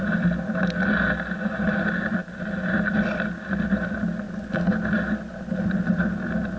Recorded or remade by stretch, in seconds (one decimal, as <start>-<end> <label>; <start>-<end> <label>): 0.0-6.6 recorded